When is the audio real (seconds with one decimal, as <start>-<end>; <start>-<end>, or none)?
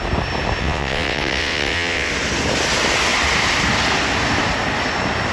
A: 0.0-0.6; 2.1-5.3